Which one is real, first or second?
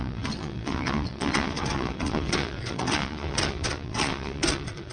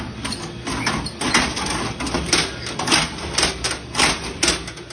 second